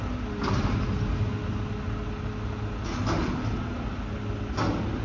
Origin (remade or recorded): recorded